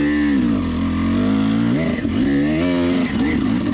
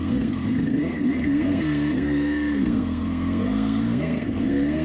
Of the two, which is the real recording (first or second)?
first